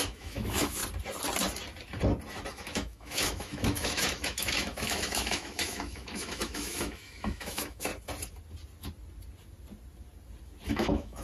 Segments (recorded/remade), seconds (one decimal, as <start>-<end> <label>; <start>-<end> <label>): 0.0-0.8 remade; 0.8-2.5 recorded; 2.5-7.9 remade; 7.9-10.7 recorded; 10.7-11.2 remade